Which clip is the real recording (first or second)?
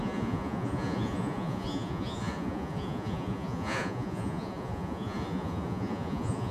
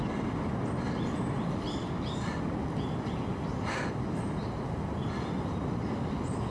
second